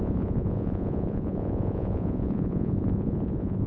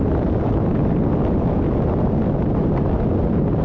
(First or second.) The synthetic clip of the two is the first